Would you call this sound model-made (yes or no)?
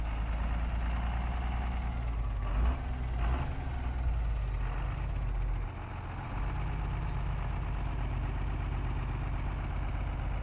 no